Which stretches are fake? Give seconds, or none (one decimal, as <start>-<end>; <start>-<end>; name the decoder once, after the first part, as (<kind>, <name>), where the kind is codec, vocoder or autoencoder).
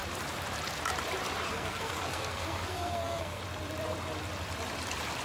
1.5-3.4 (codec, SNAC)